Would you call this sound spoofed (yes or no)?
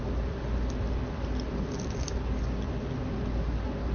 no